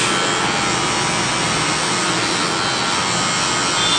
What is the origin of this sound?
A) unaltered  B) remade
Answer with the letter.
A